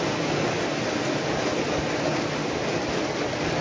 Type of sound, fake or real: real